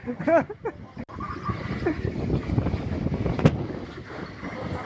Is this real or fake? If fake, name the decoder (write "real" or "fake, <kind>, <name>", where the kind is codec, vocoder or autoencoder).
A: real